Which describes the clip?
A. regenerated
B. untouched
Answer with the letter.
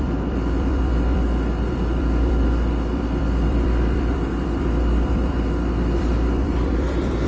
A